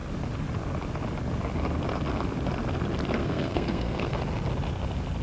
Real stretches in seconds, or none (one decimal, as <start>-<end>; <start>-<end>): 0.0-3.2; 4.2-5.2

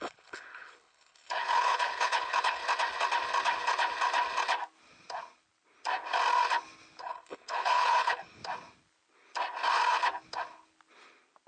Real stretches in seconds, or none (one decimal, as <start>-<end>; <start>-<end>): 2.6-7.0; 8.4-11.5

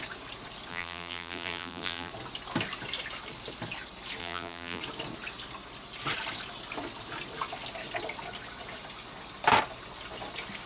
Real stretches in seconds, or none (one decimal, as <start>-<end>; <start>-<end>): 0.0-0.7; 2.1-4.2; 4.8-10.7